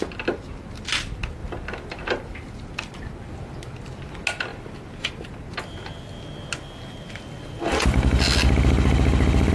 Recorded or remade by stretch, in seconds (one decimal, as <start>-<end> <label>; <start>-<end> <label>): 0.0-9.5 recorded